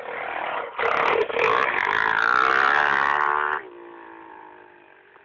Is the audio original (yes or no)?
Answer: yes